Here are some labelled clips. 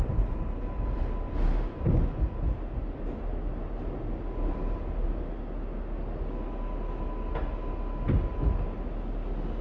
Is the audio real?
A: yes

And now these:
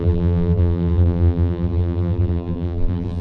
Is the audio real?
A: no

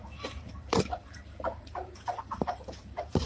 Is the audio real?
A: no